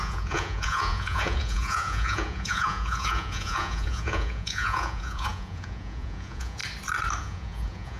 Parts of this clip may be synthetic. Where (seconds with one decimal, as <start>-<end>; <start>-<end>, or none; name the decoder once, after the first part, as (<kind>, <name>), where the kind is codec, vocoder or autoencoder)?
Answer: 0.0-6.6 (vocoder, Vocos); 7.2-8.0